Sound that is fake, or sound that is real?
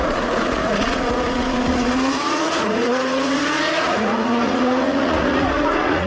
fake